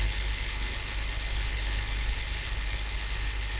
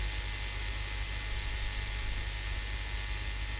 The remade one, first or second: first